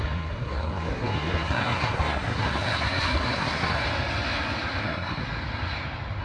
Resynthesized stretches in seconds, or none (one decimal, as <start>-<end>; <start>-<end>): 0.0-3.8; 4.8-5.2